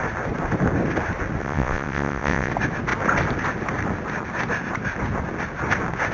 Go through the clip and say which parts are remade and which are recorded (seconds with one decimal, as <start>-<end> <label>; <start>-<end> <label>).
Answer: 0.0-1.4 recorded; 1.4-2.5 remade; 2.5-6.1 recorded